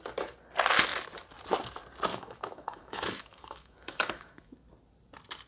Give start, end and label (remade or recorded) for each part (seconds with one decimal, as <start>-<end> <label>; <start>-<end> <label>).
0.0-2.1 recorded; 2.1-4.5 remade; 4.5-5.5 recorded